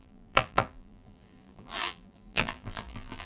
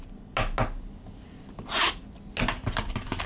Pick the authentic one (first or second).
second